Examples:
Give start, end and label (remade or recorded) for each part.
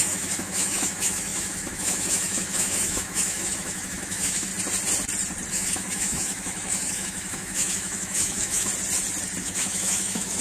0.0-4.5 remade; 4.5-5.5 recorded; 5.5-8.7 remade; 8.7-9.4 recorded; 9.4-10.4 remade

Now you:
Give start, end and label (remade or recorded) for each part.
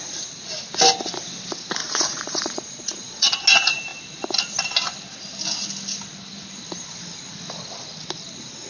0.0-1.8 recorded; 1.8-3.4 remade; 3.4-8.7 recorded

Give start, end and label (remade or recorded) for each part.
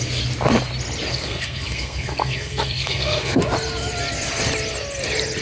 0.0-1.1 recorded; 1.1-3.4 remade; 3.4-5.4 recorded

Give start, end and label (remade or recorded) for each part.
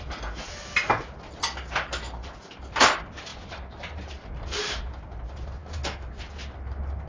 0.0-5.6 recorded; 5.6-6.2 remade; 6.2-7.1 recorded